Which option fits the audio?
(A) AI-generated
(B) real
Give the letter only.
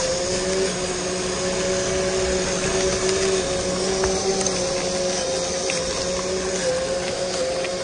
B